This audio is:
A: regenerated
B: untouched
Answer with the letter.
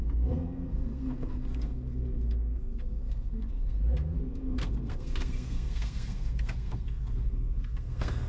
A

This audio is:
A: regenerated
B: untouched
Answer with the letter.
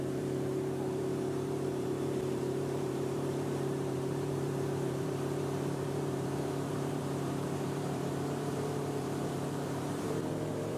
A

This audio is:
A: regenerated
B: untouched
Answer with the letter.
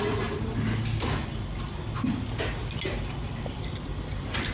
B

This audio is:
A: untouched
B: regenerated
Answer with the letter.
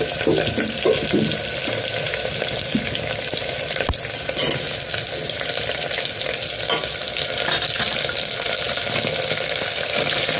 A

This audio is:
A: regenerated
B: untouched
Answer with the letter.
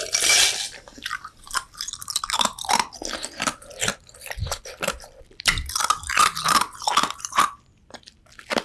A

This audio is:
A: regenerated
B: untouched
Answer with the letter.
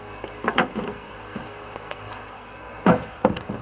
A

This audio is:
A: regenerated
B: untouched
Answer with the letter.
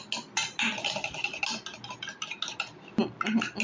B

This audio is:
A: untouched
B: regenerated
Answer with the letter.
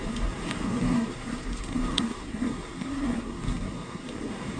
B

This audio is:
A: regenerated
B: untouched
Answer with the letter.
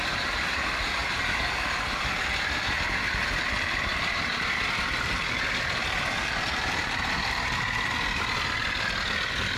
B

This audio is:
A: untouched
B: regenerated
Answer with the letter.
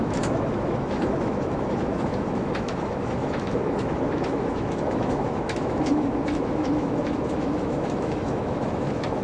B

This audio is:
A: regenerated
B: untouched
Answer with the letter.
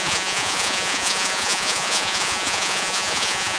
A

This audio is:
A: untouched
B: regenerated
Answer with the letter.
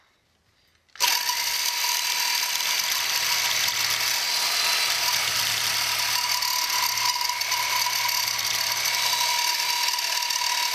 A